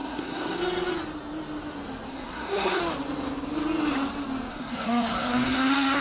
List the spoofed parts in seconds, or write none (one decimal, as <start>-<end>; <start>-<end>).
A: 0.0-0.6; 2.1-2.8; 4.5-6.0